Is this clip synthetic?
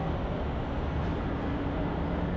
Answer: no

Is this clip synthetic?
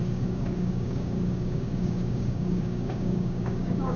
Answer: yes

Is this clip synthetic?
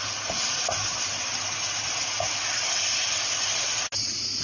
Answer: no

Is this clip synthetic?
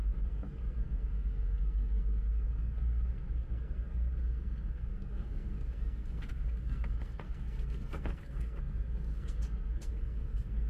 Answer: yes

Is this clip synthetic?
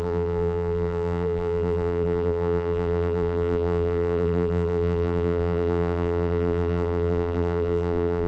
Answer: yes